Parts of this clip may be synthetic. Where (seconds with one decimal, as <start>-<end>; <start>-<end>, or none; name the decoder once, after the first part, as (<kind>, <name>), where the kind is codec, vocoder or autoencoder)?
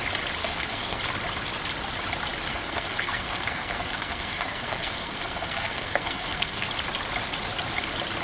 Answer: 0.4-1.0 (codec, SNAC); 2.5-6.7